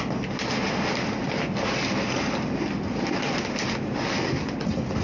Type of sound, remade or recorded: recorded